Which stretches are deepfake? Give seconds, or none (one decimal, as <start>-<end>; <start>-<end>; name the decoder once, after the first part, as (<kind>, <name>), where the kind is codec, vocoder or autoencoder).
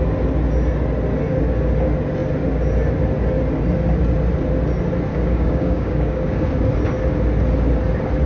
5.1-6.5 (codec, DAC)